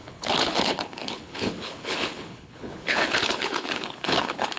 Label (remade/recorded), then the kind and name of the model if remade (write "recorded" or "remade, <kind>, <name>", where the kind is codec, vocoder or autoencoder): remade, codec, HILCodec